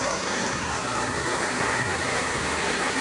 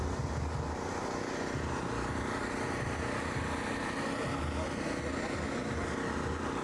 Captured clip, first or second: second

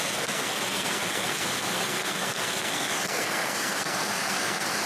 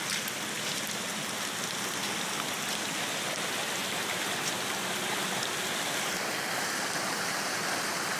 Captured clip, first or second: second